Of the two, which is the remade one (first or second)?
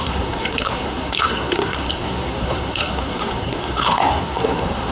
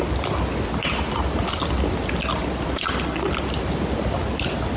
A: first